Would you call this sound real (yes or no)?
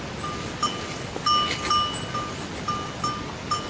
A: yes